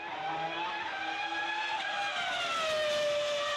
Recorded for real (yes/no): yes